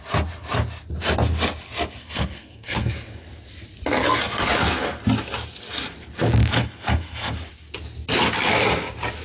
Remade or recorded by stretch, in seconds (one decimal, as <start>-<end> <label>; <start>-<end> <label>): 0.0-2.0 recorded; 2.0-2.9 remade; 2.9-6.5 recorded; 6.5-7.3 remade; 7.3-9.2 recorded